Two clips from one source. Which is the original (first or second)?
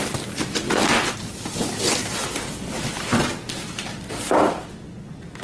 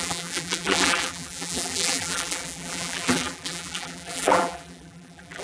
first